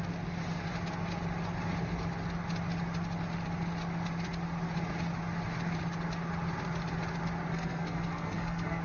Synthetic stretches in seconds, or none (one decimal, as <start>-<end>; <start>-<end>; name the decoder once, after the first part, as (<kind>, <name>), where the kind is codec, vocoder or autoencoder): 7.5-8.8 (codec, SNAC)